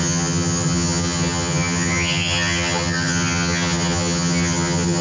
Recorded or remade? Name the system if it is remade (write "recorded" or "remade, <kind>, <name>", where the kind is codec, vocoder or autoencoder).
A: remade, vocoder, HiFi-GAN